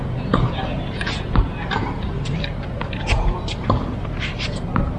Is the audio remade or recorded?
remade